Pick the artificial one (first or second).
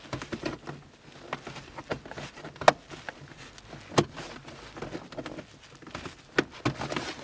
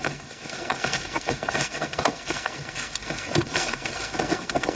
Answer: second